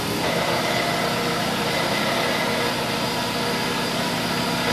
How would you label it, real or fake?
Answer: real